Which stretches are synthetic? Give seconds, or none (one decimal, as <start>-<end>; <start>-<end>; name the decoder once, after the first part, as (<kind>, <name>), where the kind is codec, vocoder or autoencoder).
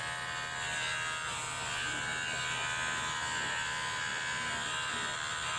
none